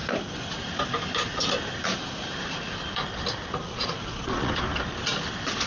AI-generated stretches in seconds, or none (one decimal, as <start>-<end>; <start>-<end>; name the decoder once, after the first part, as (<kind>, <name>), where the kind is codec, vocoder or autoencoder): 3.7-4.5 (vocoder, Vocos)